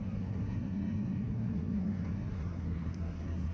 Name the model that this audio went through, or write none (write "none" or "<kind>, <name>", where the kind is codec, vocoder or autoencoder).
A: codec, SNAC